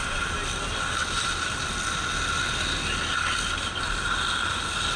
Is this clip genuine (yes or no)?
yes